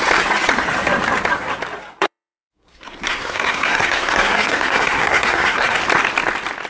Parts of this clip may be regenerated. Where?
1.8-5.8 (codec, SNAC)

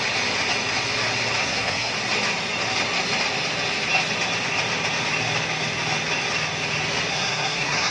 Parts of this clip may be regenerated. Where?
1.4-1.9 (codec, SNAC); 7.1-7.9

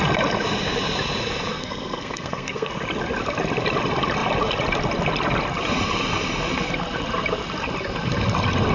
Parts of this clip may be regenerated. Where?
1.5-2.7 (codec, SNAC)

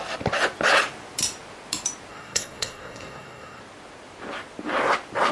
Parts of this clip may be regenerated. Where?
2.1-3.6 (codec, SNAC)